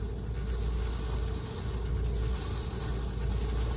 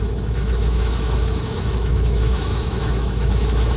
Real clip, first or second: first